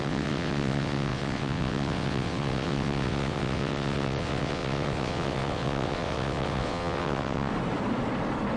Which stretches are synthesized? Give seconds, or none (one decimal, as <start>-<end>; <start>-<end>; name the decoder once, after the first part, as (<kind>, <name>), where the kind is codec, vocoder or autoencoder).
0.0-7.5 (vocoder, WaveNeXt)